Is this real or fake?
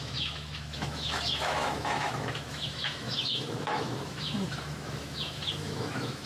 fake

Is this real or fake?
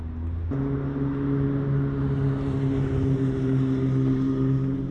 real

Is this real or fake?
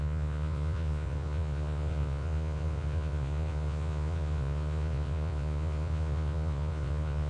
fake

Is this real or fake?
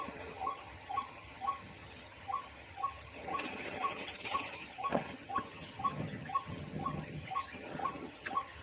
fake